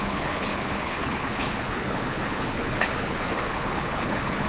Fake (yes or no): yes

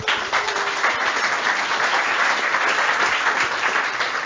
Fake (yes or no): no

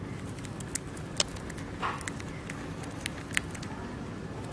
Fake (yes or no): no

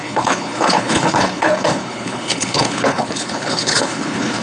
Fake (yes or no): yes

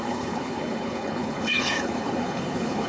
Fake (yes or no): yes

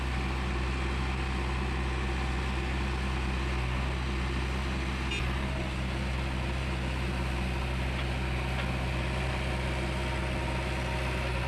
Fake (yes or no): no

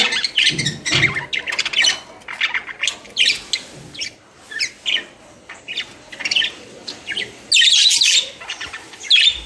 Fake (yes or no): no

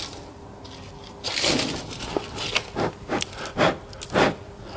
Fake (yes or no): no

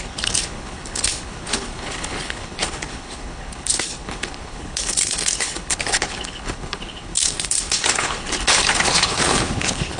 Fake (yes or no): yes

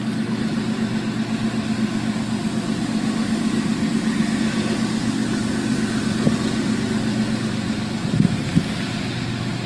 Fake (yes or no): no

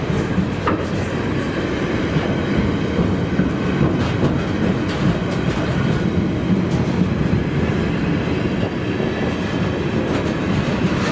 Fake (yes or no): no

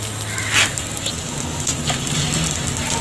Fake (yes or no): no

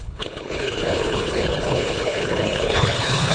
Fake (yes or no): yes